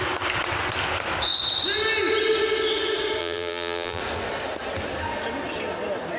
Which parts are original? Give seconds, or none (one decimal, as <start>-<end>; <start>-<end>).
0.0-3.2; 4.0-6.2